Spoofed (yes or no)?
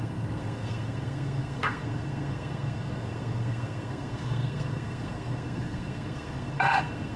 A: yes